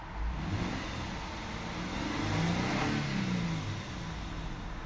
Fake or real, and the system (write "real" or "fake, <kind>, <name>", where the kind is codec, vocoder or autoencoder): real